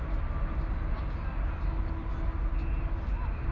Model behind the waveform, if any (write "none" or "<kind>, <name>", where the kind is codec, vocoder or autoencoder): none